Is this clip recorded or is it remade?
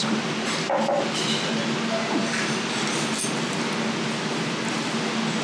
recorded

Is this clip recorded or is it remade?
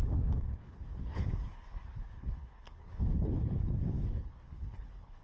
remade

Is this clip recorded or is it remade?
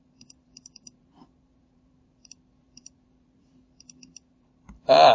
remade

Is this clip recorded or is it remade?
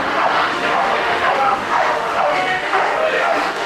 remade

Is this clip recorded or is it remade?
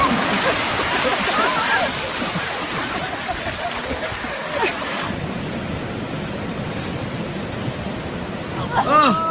recorded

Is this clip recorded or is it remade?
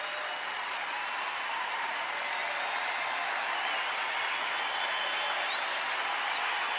recorded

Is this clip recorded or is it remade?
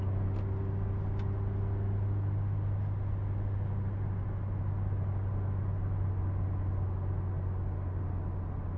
recorded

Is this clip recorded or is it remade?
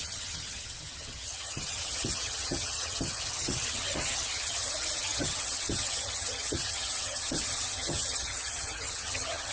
remade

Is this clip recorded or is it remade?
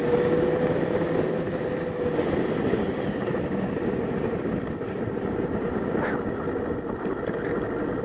recorded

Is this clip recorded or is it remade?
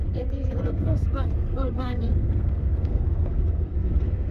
remade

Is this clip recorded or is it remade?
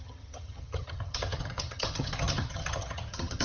remade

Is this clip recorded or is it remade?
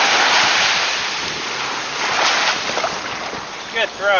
recorded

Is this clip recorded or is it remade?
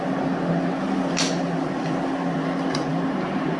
recorded